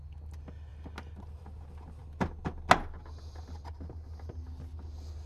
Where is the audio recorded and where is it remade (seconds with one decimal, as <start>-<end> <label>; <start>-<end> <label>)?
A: 0.0-5.3 recorded